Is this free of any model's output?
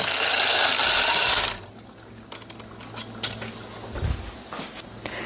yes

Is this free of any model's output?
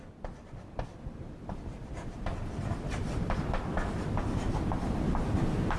yes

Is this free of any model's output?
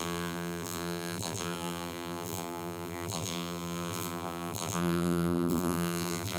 no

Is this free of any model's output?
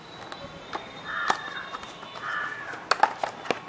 yes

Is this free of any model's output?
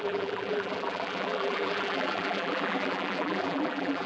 no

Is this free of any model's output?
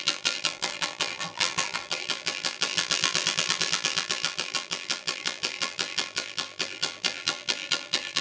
no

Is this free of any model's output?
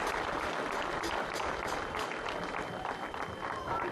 yes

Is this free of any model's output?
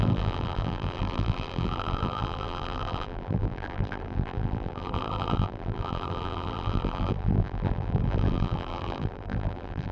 no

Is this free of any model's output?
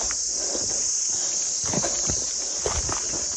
yes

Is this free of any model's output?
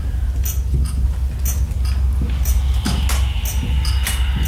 yes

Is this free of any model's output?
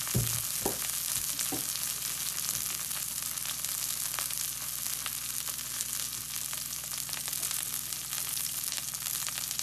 yes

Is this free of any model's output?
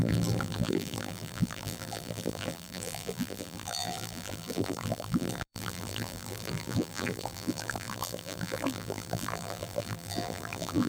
no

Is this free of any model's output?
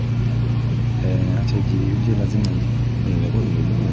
yes